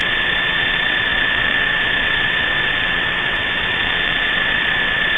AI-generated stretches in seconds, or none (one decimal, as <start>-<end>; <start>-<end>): 0.0-5.2